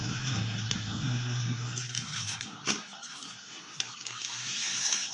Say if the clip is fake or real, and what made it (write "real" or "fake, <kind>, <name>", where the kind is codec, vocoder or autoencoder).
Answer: fake, codec, SNAC